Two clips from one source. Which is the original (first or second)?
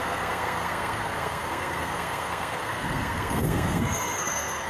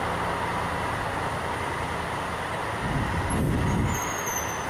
second